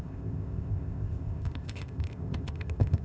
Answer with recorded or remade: remade